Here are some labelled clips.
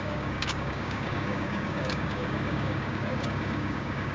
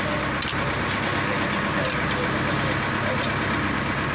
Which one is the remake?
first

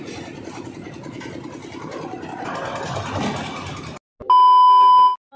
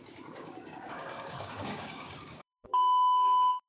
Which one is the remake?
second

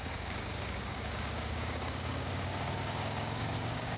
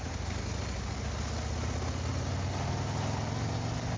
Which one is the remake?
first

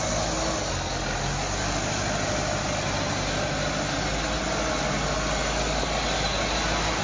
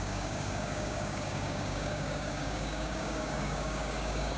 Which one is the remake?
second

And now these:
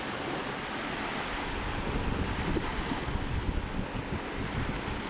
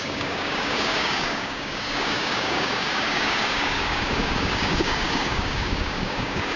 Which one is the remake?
second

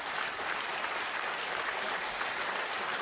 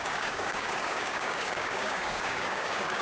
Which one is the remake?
second